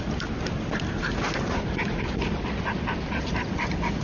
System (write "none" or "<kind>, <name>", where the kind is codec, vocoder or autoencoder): none